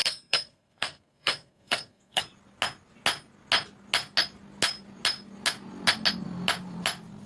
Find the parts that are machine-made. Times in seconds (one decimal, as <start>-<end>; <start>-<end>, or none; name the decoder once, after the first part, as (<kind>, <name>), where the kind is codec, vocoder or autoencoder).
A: 0.0-2.2 (codec, SNAC)